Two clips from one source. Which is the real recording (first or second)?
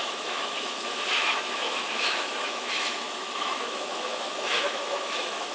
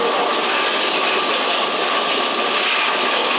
second